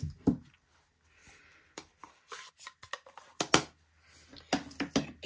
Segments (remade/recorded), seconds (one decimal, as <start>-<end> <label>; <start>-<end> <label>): 0.0-1.2 recorded; 1.2-2.5 remade; 2.5-5.3 recorded